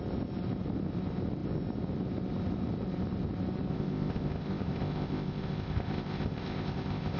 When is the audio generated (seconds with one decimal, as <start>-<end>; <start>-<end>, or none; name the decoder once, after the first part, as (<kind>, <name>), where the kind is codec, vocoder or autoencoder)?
3.7-7.2 (codec, ZipCodec)